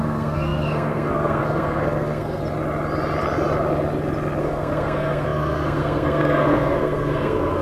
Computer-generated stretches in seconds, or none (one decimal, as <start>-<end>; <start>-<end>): 0.0-2.4; 4.4-7.6